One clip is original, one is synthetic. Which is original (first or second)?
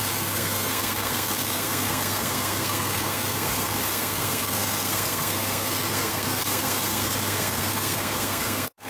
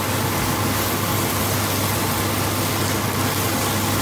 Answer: second